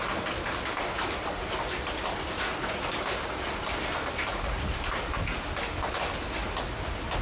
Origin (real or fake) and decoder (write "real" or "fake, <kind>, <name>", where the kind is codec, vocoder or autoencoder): real